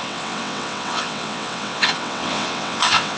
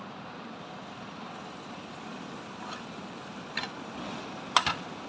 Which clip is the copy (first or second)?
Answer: first